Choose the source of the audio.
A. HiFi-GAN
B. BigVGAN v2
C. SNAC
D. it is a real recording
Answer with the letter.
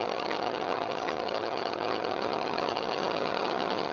A